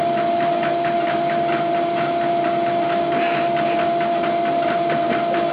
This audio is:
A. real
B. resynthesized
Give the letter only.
A